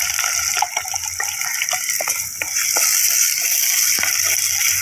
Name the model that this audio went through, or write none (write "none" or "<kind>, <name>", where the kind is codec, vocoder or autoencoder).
none